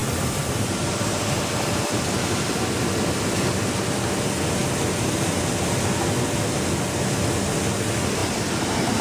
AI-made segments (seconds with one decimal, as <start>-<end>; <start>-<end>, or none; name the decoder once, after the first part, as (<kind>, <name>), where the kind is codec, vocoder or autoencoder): 0.0-2.8 (vocoder, BigVGAN v2)